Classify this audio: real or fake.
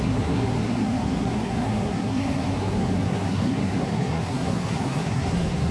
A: fake